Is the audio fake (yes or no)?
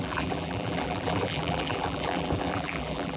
yes